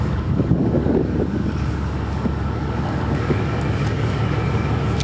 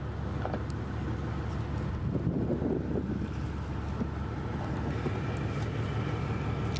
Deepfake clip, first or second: first